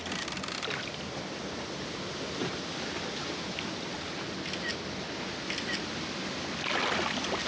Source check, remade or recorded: recorded